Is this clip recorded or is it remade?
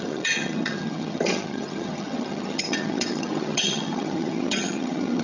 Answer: remade